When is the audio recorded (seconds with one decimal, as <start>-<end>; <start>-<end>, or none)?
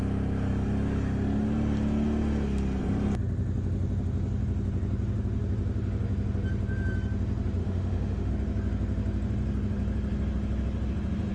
0.0-7.6; 8.3-11.3